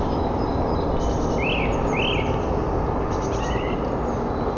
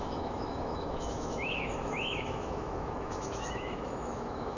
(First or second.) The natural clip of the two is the first